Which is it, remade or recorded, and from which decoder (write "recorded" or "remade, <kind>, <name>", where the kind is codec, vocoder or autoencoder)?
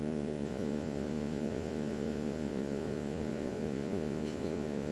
remade, vocoder, Vocos